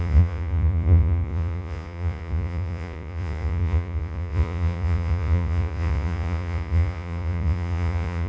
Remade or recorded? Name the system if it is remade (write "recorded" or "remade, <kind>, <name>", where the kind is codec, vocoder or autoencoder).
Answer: remade, vocoder, Vocos